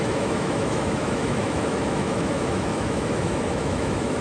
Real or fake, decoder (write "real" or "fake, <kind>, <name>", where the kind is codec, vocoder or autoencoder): fake, autoencoder, DAC-VAE